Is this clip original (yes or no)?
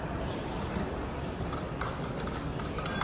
yes